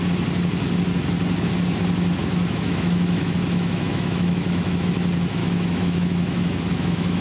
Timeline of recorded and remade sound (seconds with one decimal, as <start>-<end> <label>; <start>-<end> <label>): 0.0-2.2 recorded; 2.2-4.9 remade; 4.9-5.4 recorded; 5.4-7.2 remade